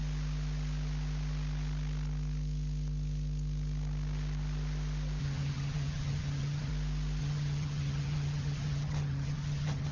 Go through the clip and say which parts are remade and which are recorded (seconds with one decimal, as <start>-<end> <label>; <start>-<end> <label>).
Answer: 0.0-5.2 recorded; 5.2-6.7 remade; 6.7-7.2 recorded; 7.2-9.9 remade